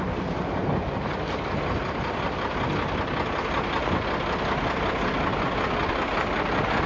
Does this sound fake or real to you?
real